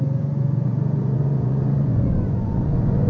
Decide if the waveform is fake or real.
fake